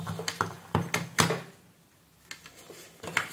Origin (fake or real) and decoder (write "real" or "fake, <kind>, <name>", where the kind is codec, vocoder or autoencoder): real